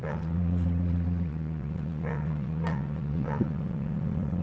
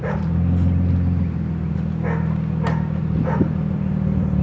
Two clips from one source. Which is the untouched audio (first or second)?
second